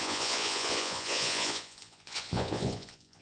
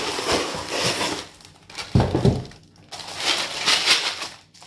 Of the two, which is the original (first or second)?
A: second